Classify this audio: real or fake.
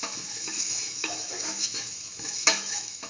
fake